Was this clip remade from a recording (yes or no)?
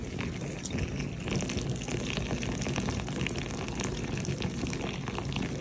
no